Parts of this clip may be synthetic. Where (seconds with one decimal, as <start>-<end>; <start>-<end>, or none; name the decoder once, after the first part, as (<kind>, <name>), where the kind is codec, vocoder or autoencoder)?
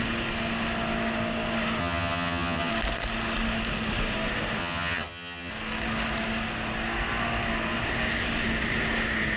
1.8-2.7 (vocoder, HiFi-GAN); 4.6-5.5